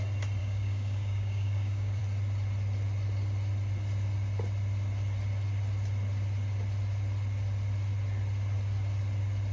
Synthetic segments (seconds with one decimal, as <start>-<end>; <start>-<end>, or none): 0.4-2.0

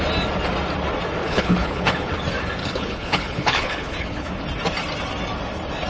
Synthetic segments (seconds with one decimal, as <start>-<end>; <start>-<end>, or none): 1.2-2.1; 2.6-4.3

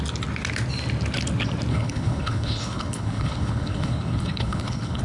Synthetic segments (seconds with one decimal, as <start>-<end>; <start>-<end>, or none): 1.7-5.0

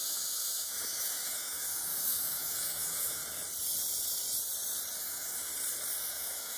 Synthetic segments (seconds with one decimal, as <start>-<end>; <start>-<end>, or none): 0.0-3.2; 4.9-5.5; 6.1-6.6

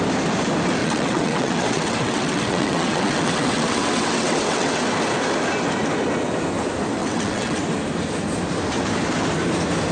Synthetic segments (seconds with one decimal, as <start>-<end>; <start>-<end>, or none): 0.8-4.8; 7.0-7.6

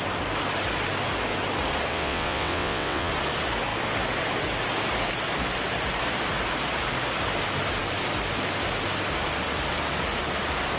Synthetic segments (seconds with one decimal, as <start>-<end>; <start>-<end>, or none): 1.9-3.1